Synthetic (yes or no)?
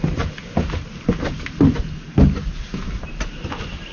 no